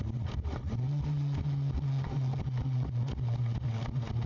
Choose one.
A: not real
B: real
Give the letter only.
B